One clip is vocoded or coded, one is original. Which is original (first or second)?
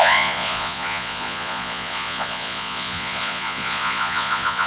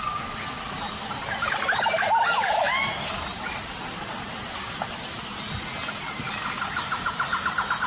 second